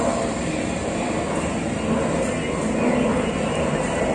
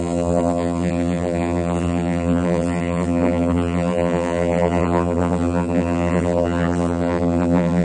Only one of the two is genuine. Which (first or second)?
first